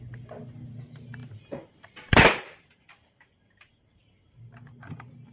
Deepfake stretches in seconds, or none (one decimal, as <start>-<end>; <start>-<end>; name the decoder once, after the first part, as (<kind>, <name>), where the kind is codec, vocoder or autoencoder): 1.2-4.4 (vocoder, BigVGAN v2)